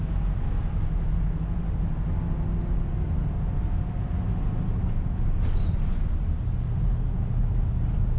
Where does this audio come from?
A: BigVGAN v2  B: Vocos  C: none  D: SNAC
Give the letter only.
C